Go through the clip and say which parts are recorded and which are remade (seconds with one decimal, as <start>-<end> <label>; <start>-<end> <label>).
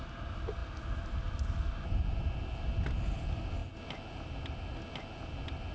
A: 0.0-5.7 recorded